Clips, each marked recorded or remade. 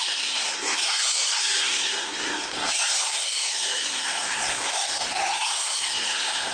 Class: remade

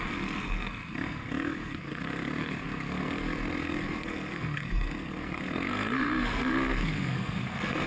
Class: remade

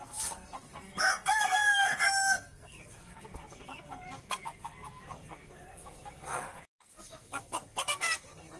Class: remade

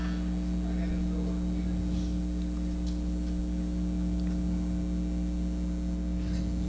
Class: recorded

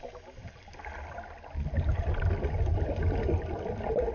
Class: recorded